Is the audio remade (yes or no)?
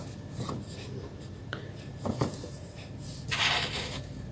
yes